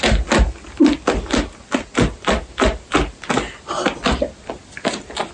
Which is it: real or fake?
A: real